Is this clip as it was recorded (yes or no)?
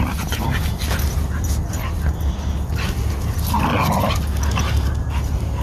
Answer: yes